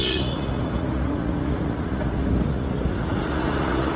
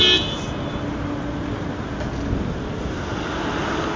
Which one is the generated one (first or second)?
first